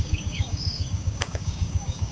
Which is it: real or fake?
fake